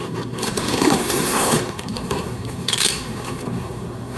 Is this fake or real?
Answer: fake